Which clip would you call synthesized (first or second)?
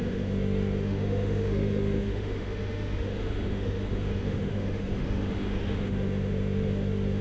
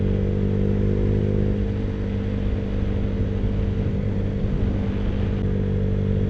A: first